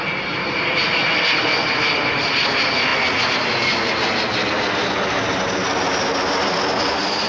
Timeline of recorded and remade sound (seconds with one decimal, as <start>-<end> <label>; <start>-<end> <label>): 0.0-7.3 recorded